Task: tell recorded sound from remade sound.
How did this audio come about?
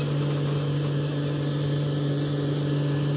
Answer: recorded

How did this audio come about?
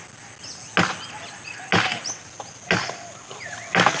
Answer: recorded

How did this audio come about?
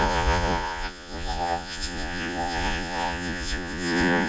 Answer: remade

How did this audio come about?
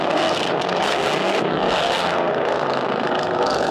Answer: remade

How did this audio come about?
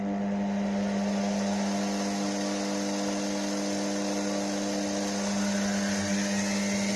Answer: recorded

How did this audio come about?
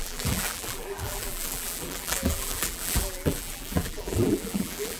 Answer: remade